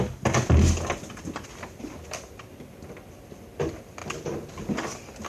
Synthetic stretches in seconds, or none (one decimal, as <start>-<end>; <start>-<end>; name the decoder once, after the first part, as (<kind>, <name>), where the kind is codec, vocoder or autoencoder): none

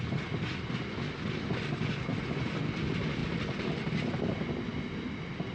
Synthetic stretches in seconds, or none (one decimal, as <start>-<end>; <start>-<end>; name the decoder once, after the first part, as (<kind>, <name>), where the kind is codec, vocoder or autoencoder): none

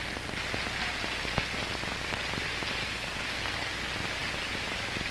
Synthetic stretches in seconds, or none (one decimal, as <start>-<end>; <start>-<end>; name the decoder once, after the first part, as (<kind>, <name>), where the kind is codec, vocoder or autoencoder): 2.8-3.7 (codec, SNAC)